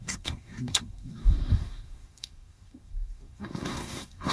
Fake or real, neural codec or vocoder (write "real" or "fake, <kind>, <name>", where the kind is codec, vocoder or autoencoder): fake, codec, SNAC